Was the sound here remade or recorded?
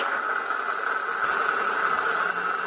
recorded